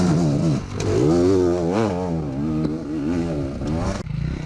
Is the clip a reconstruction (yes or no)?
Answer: no